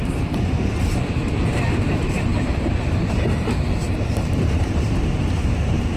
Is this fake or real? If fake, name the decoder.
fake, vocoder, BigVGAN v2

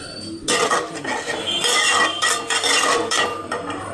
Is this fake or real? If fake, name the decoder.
fake, vocoder, BigVGAN v2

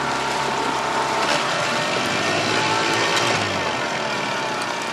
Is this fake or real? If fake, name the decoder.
real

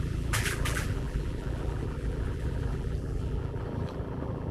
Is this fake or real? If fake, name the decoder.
fake, vocoder, BigVGAN v2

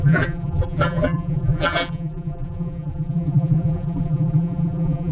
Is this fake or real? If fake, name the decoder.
fake, vocoder, BigVGAN v2